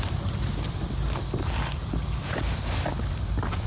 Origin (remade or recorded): recorded